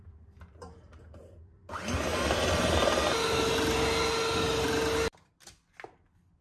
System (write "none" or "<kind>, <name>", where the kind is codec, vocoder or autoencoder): none